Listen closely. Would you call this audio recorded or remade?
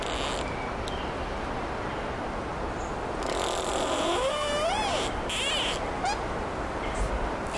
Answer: recorded